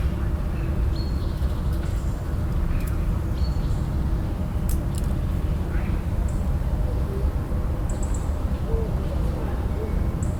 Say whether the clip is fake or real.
real